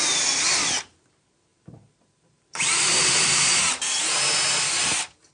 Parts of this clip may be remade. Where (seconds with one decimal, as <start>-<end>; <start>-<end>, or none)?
1.5-3.7